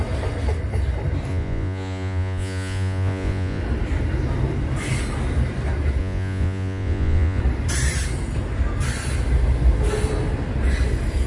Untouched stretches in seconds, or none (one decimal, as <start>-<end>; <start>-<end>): 0.0-1.3; 3.6-6.0; 7.4-11.3